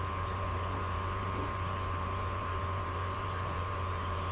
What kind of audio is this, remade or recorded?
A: remade